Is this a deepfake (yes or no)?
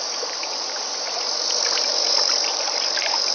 yes